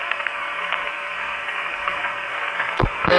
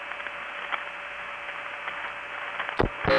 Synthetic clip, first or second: first